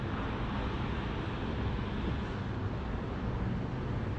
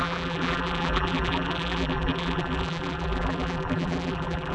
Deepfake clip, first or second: second